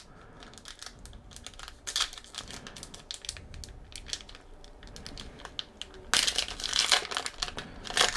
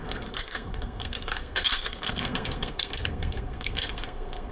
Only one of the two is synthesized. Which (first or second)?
second